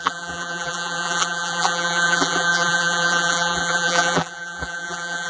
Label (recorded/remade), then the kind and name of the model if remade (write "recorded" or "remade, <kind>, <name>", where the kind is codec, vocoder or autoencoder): remade, vocoder, BigVGAN v2